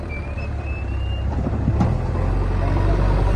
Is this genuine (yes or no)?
no